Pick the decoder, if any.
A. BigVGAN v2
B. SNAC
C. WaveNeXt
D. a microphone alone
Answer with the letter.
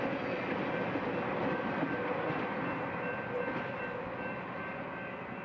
D